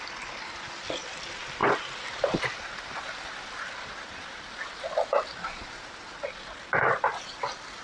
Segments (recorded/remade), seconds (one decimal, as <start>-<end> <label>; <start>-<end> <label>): 0.0-7.8 recorded